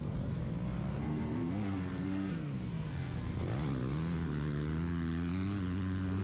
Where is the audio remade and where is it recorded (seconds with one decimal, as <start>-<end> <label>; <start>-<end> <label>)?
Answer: 0.0-0.4 remade; 0.4-0.9 recorded; 0.9-3.4 remade; 3.4-6.2 recorded